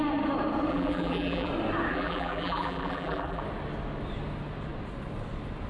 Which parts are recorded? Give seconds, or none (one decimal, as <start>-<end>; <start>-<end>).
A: 0.0-0.7; 1.5-1.9; 3.4-5.7